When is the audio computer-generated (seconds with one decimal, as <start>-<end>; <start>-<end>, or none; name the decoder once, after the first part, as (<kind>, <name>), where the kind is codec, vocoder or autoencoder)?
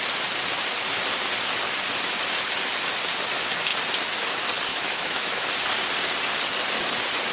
4.7-5.5 (autoencoder, DAC-VAE)